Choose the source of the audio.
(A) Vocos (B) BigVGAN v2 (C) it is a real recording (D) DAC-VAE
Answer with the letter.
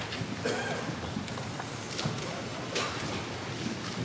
C